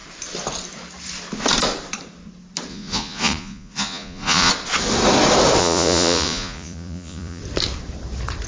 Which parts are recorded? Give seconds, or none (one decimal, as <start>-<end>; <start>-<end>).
0.0-2.7; 4.5-5.6; 7.4-8.5